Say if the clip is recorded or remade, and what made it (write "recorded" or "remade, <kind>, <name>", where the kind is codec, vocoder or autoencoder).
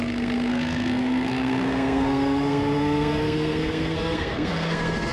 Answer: remade, codec, SNAC